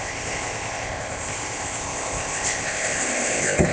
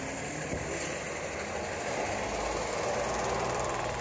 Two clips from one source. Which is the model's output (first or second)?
first